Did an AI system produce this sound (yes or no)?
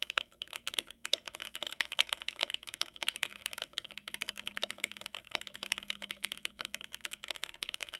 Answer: yes